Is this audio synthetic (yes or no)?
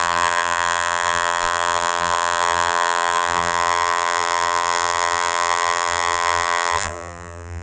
yes